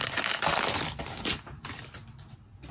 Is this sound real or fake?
real